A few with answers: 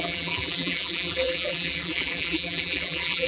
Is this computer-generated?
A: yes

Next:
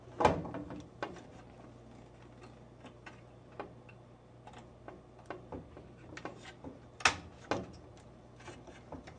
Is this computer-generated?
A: no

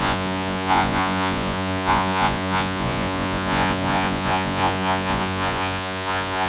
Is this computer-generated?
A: yes